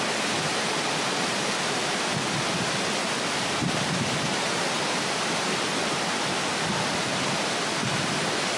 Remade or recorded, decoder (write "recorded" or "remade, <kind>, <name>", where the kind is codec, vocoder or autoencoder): recorded